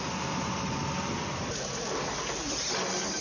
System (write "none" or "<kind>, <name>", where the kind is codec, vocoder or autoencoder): none